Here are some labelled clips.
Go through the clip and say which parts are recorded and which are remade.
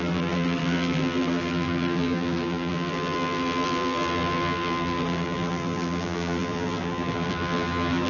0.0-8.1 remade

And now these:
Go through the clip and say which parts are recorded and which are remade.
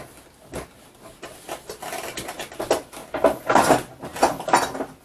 0.0-5.0 recorded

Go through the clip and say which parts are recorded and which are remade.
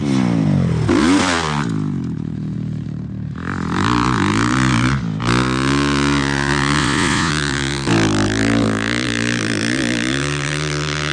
0.0-6.8 recorded; 6.8-7.3 remade; 7.3-11.1 recorded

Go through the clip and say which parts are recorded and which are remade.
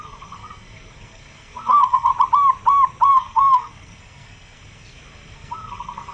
0.0-2.1 remade; 2.1-3.1 recorded; 3.1-6.1 remade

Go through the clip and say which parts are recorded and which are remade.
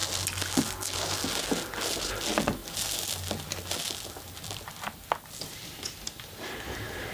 0.0-7.1 recorded